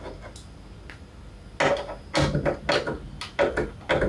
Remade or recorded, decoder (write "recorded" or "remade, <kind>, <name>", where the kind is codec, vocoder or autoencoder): recorded